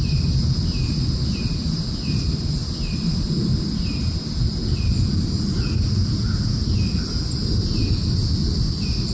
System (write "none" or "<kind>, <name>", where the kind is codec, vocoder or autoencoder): none